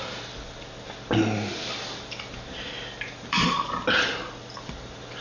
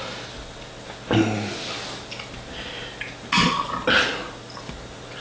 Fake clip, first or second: first